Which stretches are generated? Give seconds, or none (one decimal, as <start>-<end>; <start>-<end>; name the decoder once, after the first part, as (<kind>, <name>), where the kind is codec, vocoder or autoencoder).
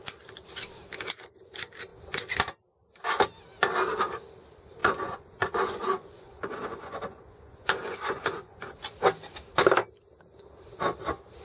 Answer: 4.8-8.8 (vocoder, Vocos)